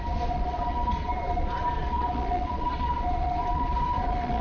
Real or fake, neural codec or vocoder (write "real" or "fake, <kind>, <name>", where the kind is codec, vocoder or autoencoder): fake, vocoder, Vocos